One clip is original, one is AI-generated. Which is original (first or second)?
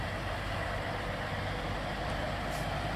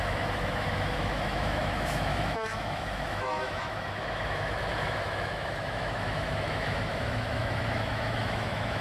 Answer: first